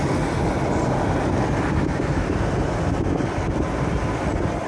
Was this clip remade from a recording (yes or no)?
no